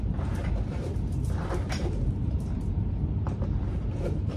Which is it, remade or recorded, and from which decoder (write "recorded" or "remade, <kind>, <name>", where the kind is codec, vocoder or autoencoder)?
remade, vocoder, BigVGAN v2